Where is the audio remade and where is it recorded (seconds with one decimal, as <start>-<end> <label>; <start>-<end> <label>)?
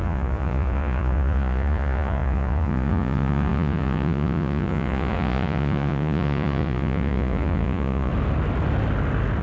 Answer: 0.0-8.1 remade; 8.1-9.4 recorded